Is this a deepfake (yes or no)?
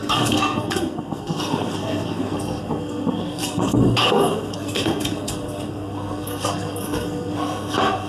yes